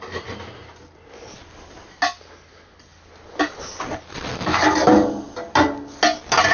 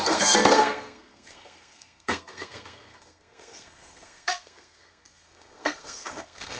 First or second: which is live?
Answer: first